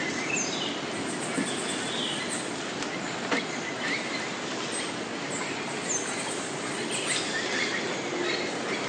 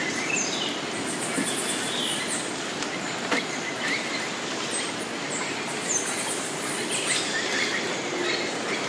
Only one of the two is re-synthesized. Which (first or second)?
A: second